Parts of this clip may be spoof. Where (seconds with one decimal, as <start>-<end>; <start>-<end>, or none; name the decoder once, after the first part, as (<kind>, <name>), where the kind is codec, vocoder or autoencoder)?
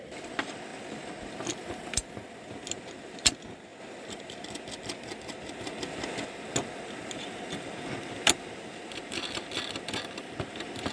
none